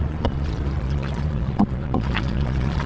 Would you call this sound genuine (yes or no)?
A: no